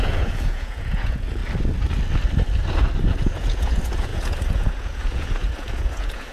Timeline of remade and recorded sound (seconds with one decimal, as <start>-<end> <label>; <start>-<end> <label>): 0.0-1.4 remade; 1.4-3.1 recorded; 3.1-6.3 remade